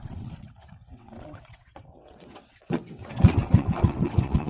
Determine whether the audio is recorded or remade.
remade